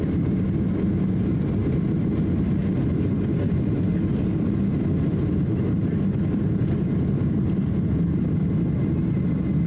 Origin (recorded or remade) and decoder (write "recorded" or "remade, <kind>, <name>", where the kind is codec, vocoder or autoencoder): recorded